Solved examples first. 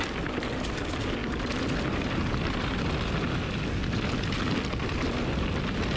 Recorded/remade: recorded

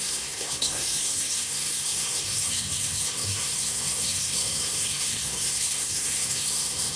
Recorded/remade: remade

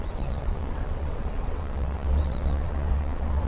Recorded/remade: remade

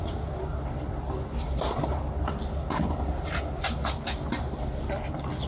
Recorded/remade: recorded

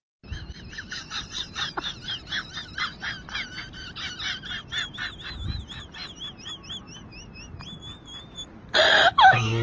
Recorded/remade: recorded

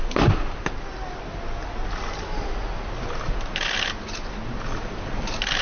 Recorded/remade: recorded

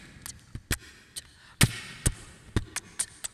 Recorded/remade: recorded